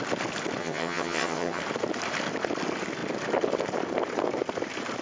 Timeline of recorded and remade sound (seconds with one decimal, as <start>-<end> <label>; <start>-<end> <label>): 0.0-0.6 recorded; 0.6-1.6 remade; 1.6-5.0 recorded